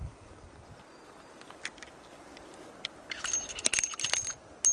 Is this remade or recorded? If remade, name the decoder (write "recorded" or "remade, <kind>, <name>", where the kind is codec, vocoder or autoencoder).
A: recorded